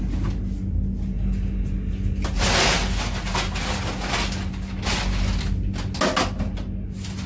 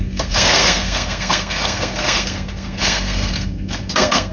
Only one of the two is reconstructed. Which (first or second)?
second